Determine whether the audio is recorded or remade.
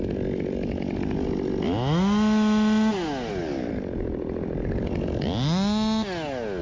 recorded